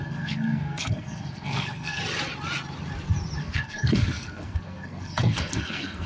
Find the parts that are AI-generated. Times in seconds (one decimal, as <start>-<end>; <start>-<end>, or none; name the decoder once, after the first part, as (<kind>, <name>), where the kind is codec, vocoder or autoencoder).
0.0-2.0 (codec, SNAC); 3.4-6.1